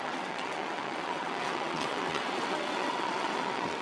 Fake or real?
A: fake